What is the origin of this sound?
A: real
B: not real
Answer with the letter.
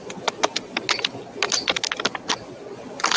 A